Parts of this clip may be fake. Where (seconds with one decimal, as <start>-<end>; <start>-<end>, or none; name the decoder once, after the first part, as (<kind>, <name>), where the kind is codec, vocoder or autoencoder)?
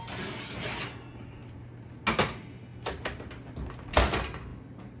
none